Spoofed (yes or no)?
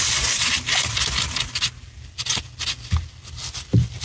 no